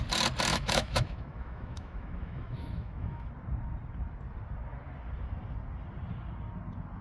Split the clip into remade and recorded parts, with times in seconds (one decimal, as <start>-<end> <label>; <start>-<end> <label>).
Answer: 0.0-0.5 recorded; 0.5-3.3 remade; 3.3-7.0 recorded